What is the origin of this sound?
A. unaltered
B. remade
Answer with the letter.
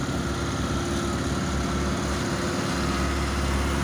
A